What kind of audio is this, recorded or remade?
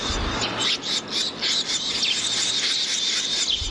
recorded